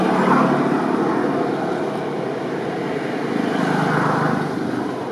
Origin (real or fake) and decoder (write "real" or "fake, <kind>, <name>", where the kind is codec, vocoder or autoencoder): real